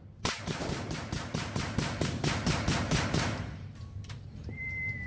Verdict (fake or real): fake